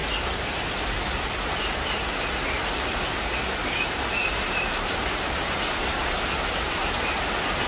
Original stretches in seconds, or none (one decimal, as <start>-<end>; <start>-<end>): 0.0-4.2; 7.3-7.7